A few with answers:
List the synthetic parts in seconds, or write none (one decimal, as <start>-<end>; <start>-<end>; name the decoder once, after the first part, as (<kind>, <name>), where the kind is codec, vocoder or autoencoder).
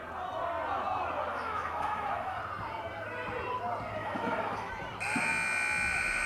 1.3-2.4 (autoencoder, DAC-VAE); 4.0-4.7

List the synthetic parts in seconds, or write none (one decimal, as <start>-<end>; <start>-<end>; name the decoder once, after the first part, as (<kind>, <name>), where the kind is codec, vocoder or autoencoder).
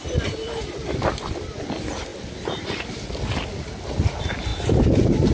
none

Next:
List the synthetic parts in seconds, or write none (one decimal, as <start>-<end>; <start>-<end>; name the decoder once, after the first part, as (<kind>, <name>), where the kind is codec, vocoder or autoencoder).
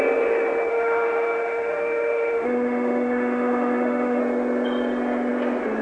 0.7-4.2 (autoencoder, DAC-VAE)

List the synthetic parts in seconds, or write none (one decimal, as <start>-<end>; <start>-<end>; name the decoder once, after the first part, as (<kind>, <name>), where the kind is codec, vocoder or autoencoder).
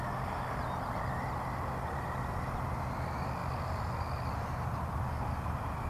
none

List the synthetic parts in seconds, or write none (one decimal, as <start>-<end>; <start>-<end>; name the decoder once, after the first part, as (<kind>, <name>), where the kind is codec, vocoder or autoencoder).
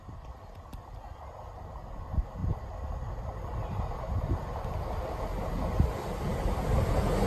none